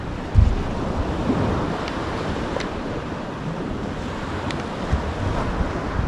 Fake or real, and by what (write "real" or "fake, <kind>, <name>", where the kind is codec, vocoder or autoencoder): fake, vocoder, BigVGAN v2